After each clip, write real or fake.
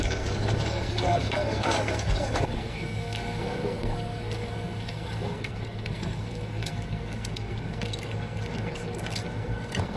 fake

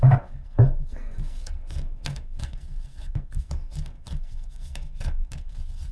fake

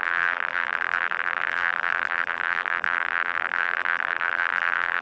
fake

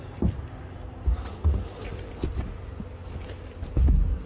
real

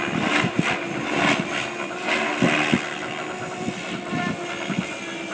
real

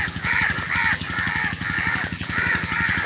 fake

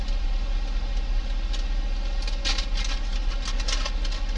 real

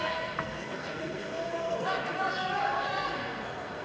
fake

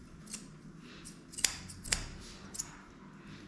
real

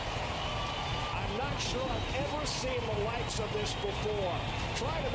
real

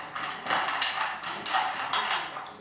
real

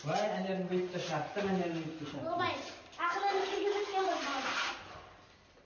real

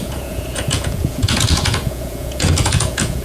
fake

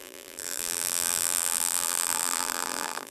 fake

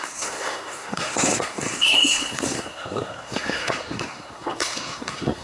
fake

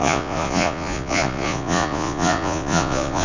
fake